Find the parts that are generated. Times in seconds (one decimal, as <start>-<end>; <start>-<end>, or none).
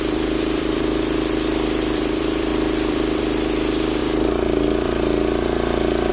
0.0-6.1